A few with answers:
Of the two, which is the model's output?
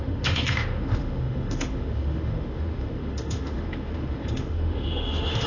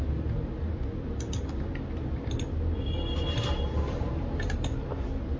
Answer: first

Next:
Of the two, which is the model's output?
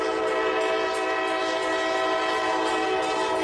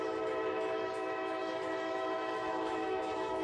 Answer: second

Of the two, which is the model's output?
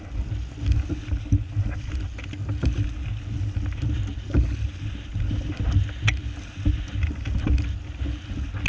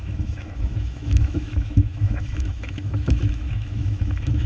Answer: second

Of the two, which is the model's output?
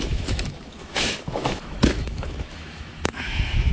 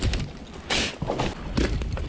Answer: first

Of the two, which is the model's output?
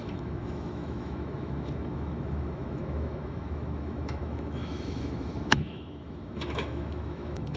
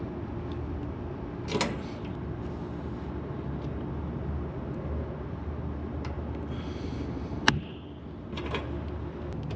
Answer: first